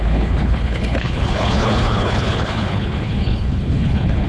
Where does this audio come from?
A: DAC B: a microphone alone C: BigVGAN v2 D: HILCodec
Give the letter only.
D